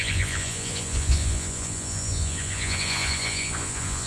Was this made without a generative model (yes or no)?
no